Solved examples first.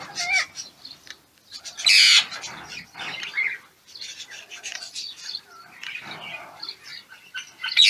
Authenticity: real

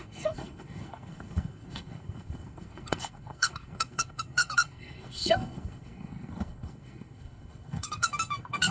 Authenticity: fake